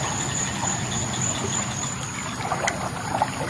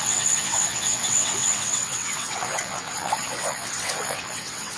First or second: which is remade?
second